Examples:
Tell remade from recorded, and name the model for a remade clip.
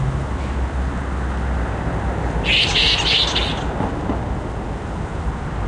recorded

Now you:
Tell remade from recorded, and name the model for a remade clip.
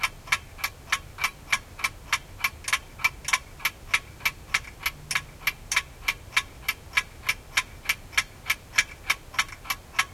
recorded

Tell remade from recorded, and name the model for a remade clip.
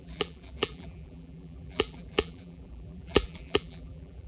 remade, vocoder, BigVGAN v2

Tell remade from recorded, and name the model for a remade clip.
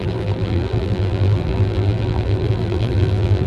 remade, vocoder, BigVGAN v2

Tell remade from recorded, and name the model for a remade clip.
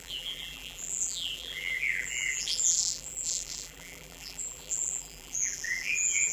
remade, vocoder, BigVGAN v2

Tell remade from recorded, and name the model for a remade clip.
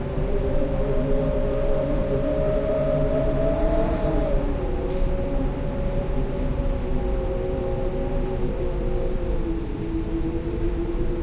remade, vocoder, BigVGAN v2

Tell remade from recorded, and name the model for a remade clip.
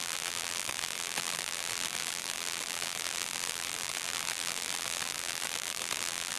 remade, vocoder, BigVGAN v2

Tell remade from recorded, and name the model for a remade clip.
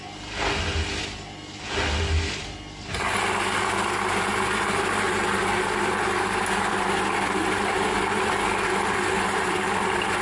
recorded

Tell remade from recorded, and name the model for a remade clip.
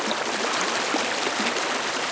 recorded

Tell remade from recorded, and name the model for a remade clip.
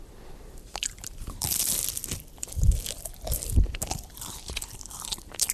remade, vocoder, BigVGAN v2